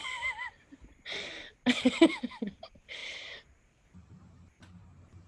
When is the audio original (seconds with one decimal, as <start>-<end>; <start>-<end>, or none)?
none